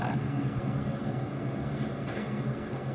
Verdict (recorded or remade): remade